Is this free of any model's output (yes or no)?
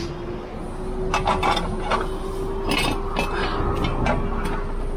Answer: yes